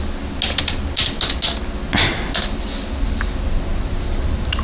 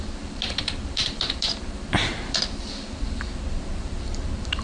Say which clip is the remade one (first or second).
second